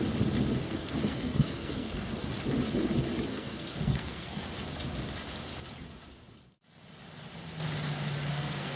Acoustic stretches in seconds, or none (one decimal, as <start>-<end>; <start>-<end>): 0.0-0.6; 2.3-3.3; 4.5-8.3